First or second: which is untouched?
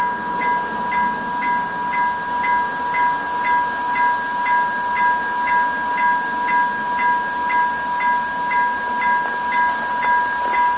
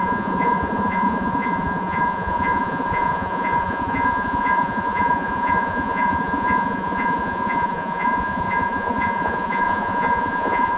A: first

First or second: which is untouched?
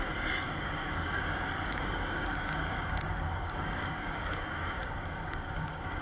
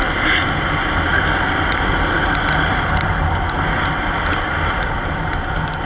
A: second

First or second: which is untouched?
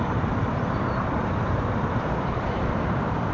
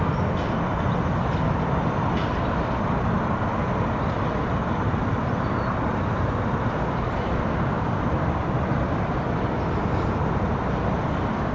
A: second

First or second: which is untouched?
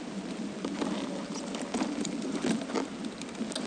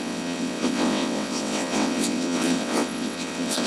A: first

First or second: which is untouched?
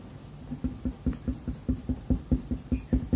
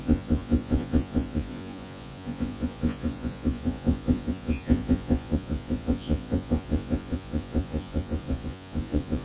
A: first